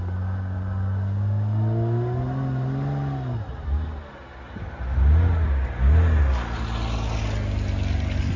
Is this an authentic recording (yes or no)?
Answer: yes